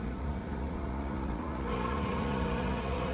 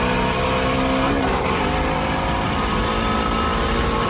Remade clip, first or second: first